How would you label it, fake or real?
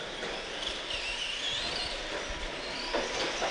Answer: real